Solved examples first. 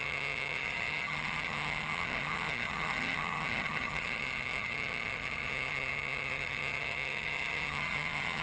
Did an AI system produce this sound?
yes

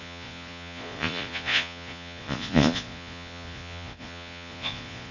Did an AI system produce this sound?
yes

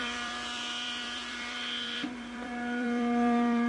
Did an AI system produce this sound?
yes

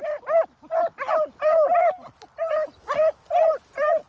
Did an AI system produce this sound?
no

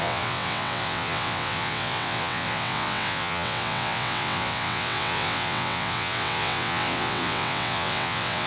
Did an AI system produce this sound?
yes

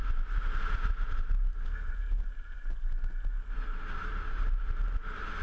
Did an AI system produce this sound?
no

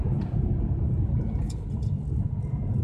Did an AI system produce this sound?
yes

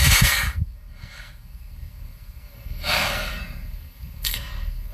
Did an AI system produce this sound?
yes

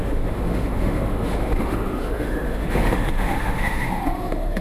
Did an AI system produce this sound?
yes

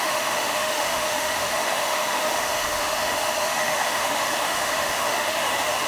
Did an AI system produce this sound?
yes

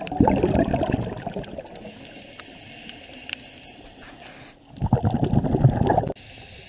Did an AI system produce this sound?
no